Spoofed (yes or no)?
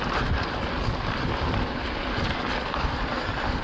no